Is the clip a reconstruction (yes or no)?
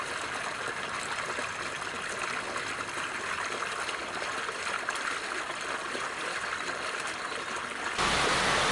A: no